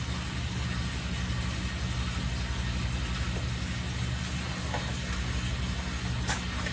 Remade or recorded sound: recorded